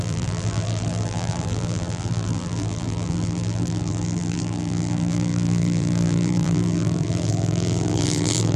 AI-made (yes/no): yes